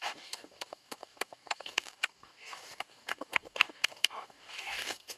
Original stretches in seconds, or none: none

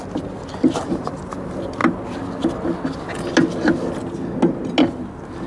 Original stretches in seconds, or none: 0.0-5.5

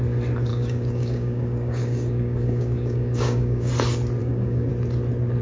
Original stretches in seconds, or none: 0.0-0.5; 3.7-4.2; 4.7-5.4

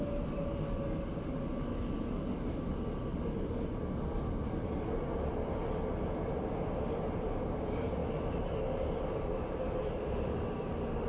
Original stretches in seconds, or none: 0.0-11.1

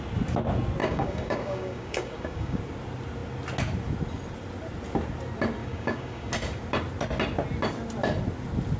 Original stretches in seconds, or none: 0.0-0.8; 2.6-5.6; 6.3-8.8

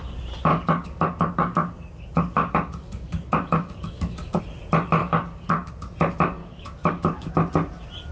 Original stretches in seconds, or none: 0.0-0.5; 4.4-5.0; 5.7-6.4; 7.3-8.1

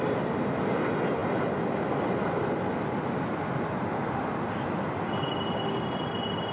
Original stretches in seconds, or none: 0.0-6.5

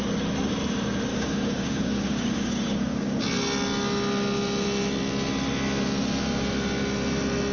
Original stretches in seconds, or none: 0.0-1.1; 3.2-7.5